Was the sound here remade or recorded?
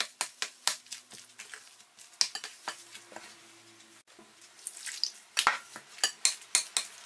recorded